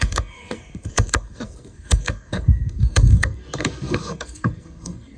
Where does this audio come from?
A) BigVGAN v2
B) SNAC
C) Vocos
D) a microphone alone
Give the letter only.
B